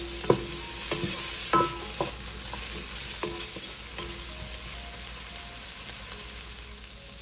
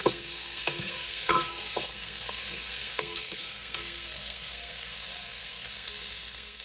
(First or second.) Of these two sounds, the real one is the first